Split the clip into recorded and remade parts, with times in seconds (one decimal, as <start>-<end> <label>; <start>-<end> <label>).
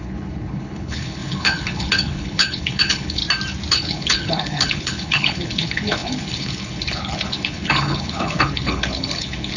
0.0-3.2 remade; 3.2-3.7 recorded; 3.7-9.6 remade